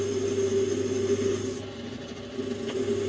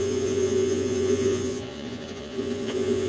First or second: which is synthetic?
second